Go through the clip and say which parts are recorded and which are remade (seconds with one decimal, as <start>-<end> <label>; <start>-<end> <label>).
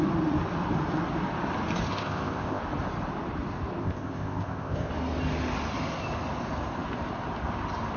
0.0-1.9 recorded; 1.9-2.6 remade; 2.6-3.8 recorded; 3.8-4.9 remade; 4.9-8.0 recorded